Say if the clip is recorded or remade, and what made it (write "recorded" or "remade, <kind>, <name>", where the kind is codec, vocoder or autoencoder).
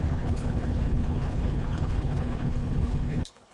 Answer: remade, codec, HILCodec